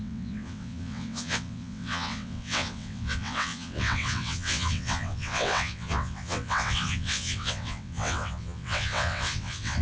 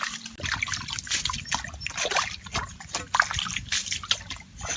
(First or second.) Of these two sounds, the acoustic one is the second